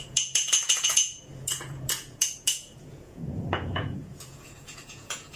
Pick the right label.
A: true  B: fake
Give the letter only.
B